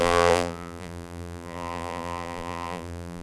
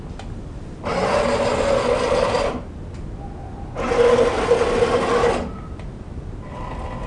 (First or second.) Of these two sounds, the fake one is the first